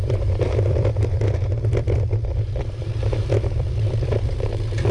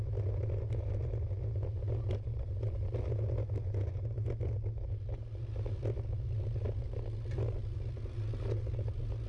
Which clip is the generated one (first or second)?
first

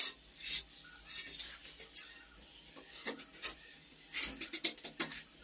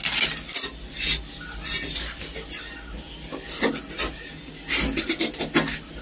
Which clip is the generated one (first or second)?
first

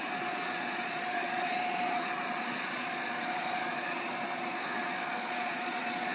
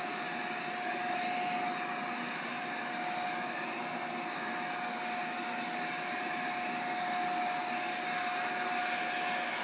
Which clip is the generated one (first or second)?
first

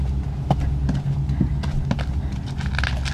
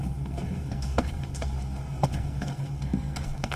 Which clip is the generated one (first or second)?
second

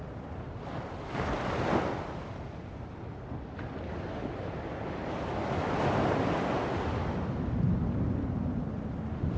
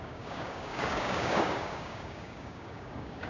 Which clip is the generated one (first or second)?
second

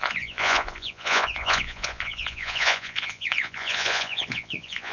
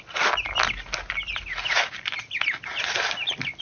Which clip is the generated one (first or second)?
first